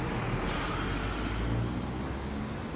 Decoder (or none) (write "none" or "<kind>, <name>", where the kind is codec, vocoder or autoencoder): none